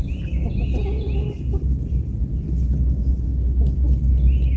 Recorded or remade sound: recorded